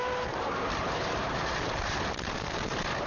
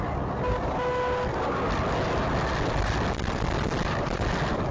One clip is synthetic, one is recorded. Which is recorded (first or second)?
second